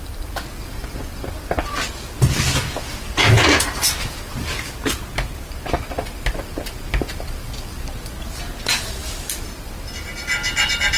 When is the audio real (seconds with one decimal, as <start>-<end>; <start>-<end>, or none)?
0.0-11.0